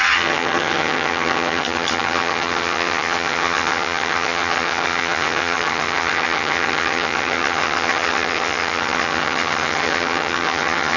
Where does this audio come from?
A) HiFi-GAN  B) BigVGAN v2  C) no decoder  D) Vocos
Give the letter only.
A